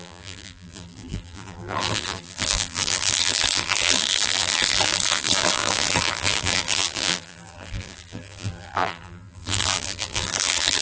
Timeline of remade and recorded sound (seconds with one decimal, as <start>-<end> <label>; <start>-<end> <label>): 0.0-10.8 remade